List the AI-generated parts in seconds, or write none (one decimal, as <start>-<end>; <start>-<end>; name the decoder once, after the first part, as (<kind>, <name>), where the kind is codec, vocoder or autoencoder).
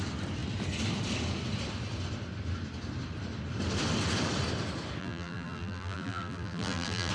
5.0-7.1 (vocoder, BigVGAN v2)